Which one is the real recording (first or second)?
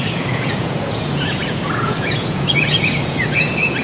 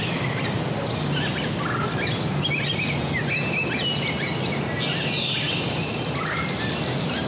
second